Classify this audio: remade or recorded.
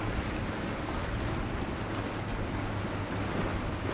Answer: recorded